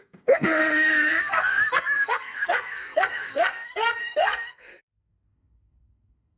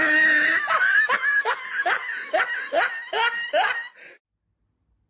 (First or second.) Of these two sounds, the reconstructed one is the first